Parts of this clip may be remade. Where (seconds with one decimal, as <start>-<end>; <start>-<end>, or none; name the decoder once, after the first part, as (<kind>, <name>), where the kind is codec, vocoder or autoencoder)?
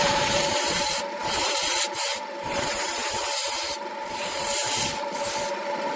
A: 0.0-6.0 (vocoder, BigVGAN v2)